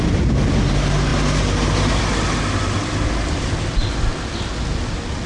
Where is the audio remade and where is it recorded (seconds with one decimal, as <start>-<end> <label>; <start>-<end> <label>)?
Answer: 0.0-5.3 recorded